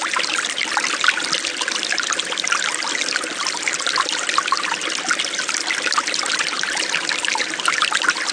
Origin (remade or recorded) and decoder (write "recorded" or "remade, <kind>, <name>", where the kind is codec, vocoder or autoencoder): recorded